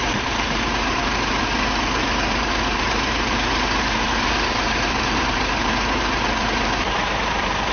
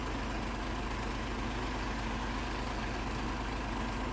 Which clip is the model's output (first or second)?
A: first